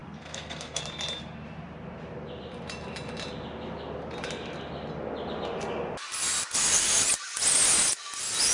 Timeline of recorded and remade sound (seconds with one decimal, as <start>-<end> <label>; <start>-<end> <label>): 0.0-0.8 remade; 0.8-8.5 recorded